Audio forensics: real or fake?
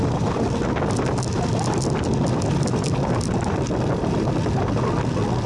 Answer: real